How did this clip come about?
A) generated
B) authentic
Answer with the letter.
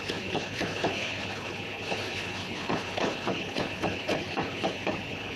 A